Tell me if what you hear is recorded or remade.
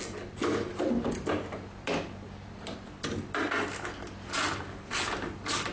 recorded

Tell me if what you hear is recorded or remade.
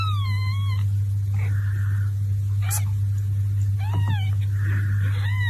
recorded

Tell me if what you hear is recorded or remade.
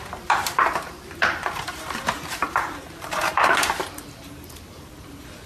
remade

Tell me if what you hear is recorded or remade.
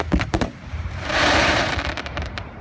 remade